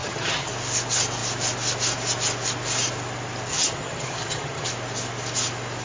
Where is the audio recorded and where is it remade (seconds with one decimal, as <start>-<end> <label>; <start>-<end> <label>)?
0.0-0.5 remade; 0.5-3.5 recorded; 3.5-4.7 remade; 4.7-5.8 recorded